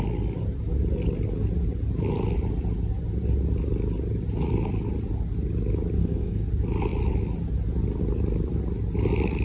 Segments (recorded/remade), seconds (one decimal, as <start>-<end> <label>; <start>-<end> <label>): 0.0-6.0 recorded; 6.0-6.5 remade; 6.5-9.4 recorded